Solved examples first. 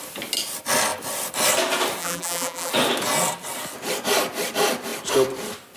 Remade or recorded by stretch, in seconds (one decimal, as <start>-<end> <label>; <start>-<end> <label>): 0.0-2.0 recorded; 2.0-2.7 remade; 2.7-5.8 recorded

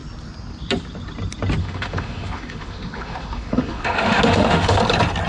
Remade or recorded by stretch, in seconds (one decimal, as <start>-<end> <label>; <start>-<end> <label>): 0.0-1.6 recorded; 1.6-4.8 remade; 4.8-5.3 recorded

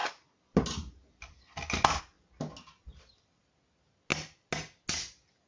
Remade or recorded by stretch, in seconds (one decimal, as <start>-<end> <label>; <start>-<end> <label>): 0.0-5.5 recorded